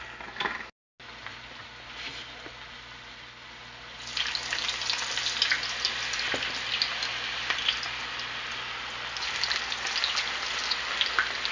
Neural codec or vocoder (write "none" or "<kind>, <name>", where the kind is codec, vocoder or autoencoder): none